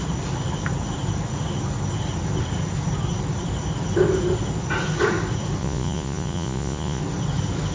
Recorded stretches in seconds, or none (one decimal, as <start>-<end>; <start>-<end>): 0.0-5.6; 7.0-7.7